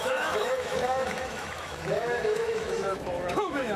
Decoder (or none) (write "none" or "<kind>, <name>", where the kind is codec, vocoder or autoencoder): autoencoder, DAC-VAE